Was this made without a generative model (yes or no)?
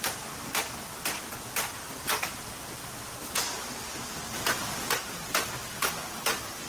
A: yes